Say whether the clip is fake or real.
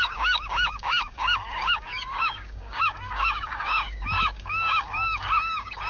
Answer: fake